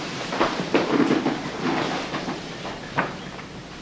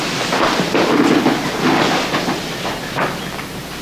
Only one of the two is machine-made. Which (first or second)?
first